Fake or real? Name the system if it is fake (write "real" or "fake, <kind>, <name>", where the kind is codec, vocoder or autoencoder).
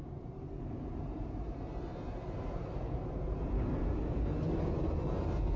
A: fake, vocoder, BigVGAN v2